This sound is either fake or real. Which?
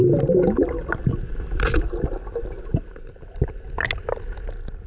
real